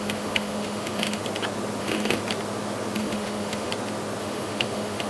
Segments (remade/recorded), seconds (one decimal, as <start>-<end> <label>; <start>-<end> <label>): 0.0-1.2 remade; 1.2-1.8 recorded; 1.8-2.2 remade; 2.2-3.0 recorded; 3.0-3.7 remade; 3.7-4.2 recorded; 4.2-5.1 remade